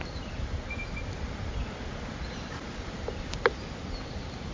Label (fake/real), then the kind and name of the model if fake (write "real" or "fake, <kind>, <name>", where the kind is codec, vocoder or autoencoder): real